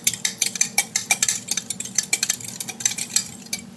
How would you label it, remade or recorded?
remade